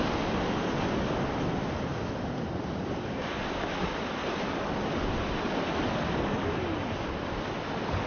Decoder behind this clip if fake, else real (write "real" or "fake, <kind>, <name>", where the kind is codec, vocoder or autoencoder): real